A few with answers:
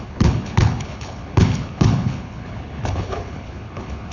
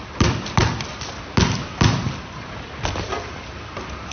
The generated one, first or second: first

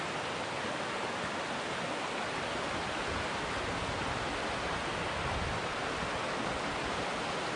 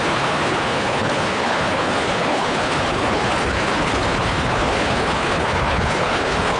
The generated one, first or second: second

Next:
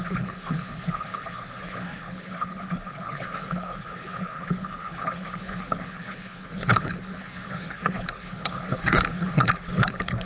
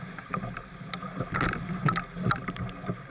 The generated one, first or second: first